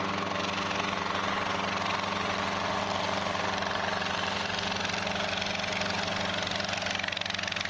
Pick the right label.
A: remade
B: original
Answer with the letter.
B